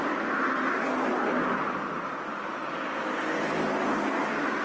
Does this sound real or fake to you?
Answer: real